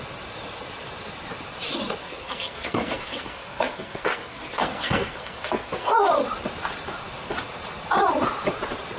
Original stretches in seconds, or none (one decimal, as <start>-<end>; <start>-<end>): 0.0-2.0; 6.1-9.0